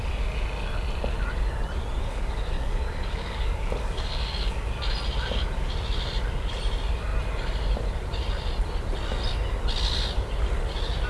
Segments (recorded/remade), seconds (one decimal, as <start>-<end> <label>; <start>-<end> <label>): 0.0-2.0 recorded; 2.0-4.7 remade; 4.7-11.1 recorded